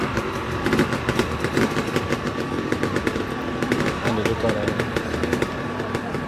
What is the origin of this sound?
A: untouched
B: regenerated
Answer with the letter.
B